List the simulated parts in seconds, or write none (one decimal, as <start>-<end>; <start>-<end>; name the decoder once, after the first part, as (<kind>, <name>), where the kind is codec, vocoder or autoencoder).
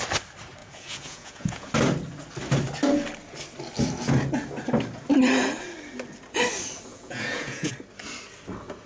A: 0.6-1.7 (vocoder, Vocos); 6.9-7.7